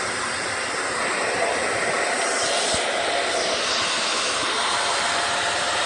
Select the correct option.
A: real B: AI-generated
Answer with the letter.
A